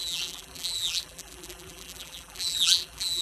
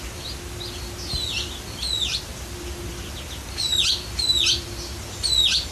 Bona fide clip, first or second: second